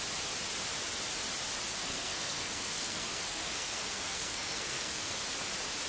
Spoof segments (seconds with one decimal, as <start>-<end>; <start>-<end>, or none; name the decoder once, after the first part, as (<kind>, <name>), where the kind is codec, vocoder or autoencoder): 1.7-5.2 (codec, SNAC)

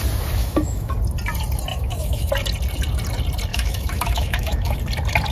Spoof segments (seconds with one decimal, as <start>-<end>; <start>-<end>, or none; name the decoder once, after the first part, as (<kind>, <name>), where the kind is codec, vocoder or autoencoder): 0.4-0.9 (autoencoder, DAC-VAE); 1.7-2.3; 3.5-4.8

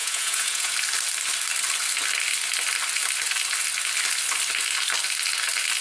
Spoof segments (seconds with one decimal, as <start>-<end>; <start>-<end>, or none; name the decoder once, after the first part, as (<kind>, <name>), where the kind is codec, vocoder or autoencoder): 0.0-0.7 (vocoder, Vocos)

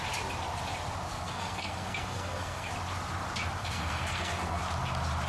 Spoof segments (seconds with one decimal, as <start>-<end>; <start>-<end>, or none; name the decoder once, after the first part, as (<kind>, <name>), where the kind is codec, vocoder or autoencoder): 1.1-2.7 (codec, SNAC); 3.6-4.6

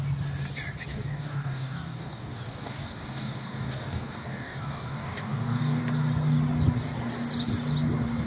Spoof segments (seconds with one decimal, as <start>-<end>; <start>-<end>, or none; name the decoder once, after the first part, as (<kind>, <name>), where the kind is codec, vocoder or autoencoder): 0.9-5.8 (codec, DAC)

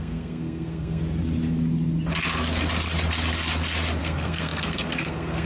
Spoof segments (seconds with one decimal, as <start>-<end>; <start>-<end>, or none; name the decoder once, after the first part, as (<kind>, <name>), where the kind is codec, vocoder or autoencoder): 0.0-1.0 (codec, SNAC); 4.0-5.5